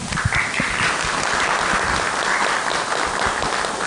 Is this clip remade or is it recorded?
recorded